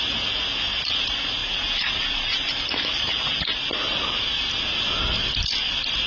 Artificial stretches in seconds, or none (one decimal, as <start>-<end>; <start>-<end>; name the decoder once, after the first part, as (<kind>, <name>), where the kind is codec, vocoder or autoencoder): 1.4-3.4 (vocoder, BigVGAN v2)